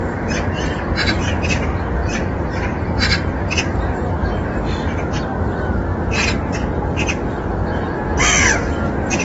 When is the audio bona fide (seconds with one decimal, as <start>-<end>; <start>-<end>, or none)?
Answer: 1.2-2.0; 4.6-9.2

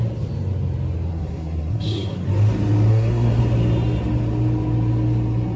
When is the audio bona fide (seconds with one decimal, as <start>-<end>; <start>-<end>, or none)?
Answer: 0.0-1.1; 2.2-2.9; 3.4-5.6

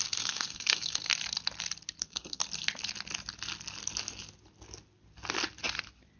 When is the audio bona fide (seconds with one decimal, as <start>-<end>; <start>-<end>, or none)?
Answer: 1.1-2.0; 2.4-6.2

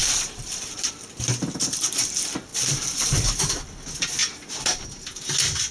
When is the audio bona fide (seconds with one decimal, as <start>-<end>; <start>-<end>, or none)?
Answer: 0.9-2.5; 3.6-4.2; 4.8-5.7

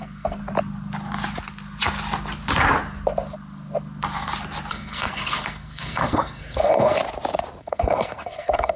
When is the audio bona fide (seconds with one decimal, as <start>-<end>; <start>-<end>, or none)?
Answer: 0.4-4.7; 7.0-7.6

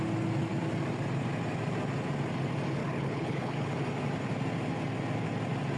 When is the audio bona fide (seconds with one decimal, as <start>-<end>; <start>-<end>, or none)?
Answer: 0.0-2.8; 3.7-5.8